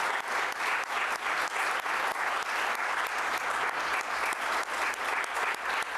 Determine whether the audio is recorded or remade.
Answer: recorded